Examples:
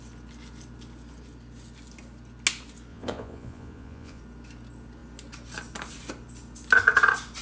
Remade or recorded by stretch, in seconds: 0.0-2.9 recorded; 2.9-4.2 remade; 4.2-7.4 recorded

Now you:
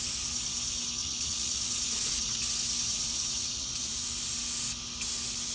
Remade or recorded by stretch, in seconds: 0.0-1.0 recorded; 1.0-2.4 remade; 2.4-2.9 recorded; 2.9-4.1 remade; 4.1-5.5 recorded